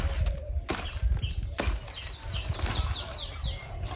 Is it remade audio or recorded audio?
recorded